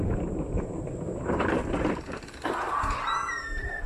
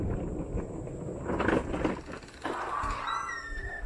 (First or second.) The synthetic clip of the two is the first